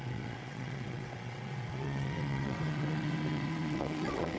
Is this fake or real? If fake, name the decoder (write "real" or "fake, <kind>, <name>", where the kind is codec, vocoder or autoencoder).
fake, vocoder, WaveNeXt